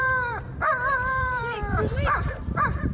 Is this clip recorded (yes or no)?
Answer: no